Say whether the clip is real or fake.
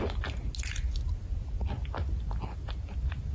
real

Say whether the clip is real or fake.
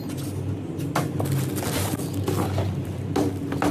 real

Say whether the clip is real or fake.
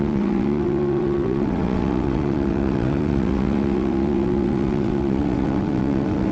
fake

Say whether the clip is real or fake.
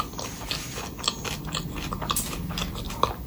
real